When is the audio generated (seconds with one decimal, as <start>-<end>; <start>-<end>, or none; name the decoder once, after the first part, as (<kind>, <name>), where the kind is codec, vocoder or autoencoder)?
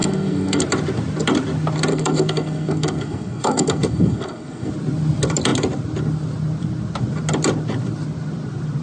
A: 0.0-0.6 (codec, SNAC); 1.9-4.7